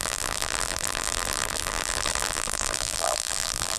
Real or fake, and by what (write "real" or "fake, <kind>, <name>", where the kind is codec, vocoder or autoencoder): fake, vocoder, BigVGAN v2